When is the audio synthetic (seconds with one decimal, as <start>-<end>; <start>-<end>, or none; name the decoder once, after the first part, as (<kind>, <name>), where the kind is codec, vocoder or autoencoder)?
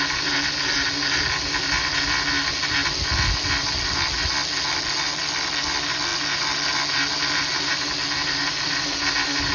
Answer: none